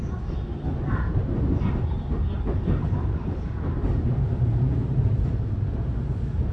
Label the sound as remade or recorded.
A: recorded